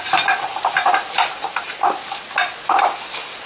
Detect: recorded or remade recorded